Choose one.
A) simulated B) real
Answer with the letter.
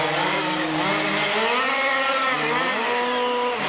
B